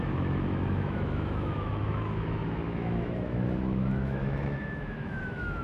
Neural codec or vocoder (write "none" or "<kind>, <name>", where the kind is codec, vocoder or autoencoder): autoencoder, DAC-VAE